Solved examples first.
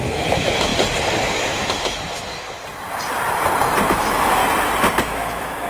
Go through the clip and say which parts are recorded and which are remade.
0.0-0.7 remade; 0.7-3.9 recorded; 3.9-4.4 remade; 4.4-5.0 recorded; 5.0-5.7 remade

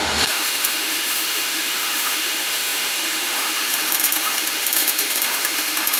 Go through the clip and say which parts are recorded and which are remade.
0.0-6.0 remade

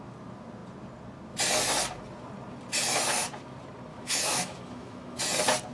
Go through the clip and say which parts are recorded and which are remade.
0.0-3.9 recorded; 3.9-5.2 remade; 5.2-5.7 recorded

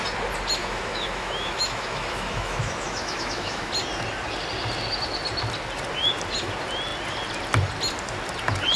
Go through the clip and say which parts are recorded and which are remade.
0.0-0.6 recorded; 0.6-3.7 remade; 3.7-8.8 recorded

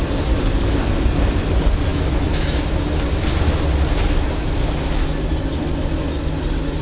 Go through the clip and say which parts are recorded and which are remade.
0.0-1.9 recorded; 1.9-2.7 remade; 2.7-6.8 recorded